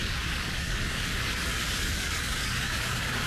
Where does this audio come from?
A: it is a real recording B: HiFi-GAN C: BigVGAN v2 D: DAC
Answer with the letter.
D